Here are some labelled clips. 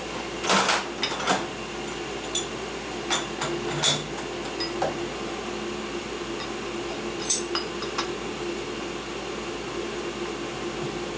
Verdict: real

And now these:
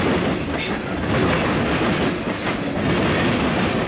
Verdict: real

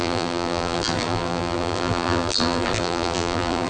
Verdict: fake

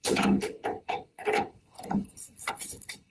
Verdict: fake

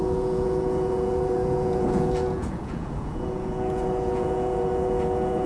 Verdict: fake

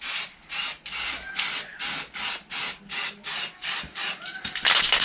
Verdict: real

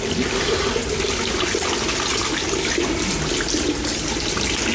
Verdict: real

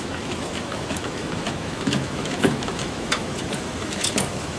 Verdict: fake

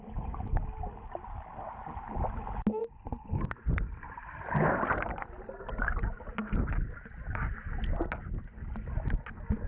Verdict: real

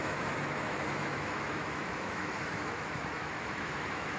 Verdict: fake